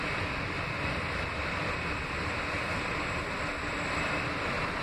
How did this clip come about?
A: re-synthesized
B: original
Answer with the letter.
B